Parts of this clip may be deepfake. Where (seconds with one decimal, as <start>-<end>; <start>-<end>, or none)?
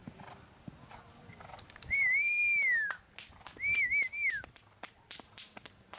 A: 1.9-2.3; 4.4-6.0